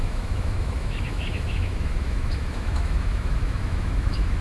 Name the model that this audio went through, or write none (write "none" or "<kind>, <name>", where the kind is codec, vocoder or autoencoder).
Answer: autoencoder, DAC-VAE